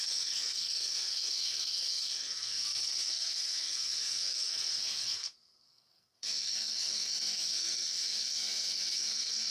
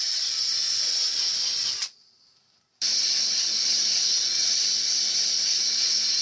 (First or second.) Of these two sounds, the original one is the second